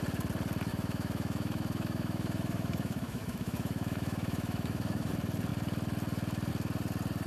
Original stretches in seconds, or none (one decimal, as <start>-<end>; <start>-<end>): 0.0-0.7; 5.1-7.3